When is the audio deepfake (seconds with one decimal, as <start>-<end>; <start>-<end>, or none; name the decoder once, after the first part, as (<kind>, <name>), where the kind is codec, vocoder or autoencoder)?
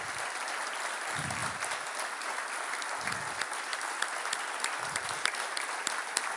none